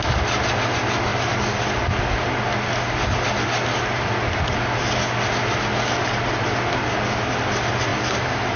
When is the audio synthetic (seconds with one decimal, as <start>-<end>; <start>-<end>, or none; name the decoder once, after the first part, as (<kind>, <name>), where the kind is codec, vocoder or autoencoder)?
7.9-8.6 (vocoder, BigVGAN v2)